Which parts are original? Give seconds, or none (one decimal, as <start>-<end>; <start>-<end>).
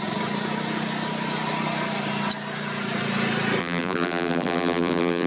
0.0-3.6